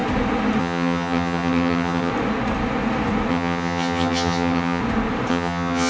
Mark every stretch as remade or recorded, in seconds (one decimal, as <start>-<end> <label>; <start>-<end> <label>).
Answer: 0.0-0.6 recorded; 0.6-2.1 remade; 2.1-3.3 recorded; 3.3-4.8 remade; 4.8-5.3 recorded; 5.3-5.9 remade